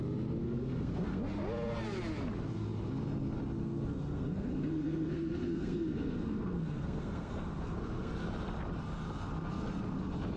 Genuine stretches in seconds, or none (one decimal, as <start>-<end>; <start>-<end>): 0.0-0.4; 1.2-3.6; 8.1-10.4